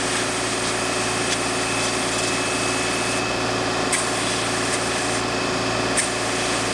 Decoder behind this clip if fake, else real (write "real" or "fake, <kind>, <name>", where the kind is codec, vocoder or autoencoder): real